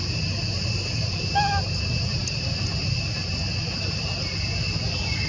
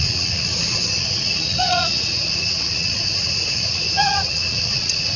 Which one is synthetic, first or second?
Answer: second